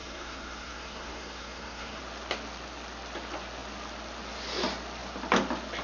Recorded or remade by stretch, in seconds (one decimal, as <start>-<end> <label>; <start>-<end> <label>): 0.0-2.0 remade; 2.0-5.8 recorded